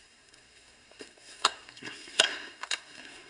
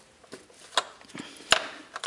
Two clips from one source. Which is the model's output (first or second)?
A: first